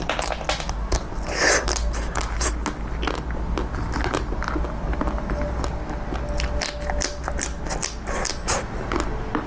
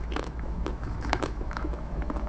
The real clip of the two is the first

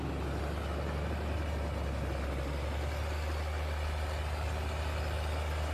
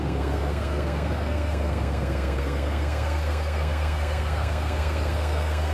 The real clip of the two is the first